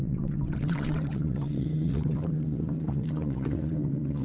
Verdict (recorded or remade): remade